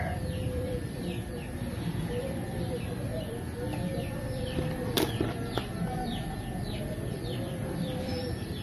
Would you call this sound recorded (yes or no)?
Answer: no